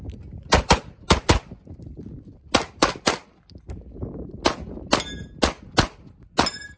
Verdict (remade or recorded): recorded